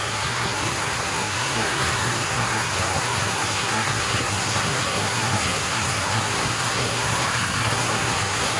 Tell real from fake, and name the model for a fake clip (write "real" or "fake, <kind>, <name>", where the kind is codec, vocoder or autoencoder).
fake, codec, SNAC